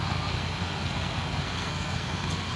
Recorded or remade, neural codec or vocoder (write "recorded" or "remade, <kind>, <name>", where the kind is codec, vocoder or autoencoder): remade, codec, SNAC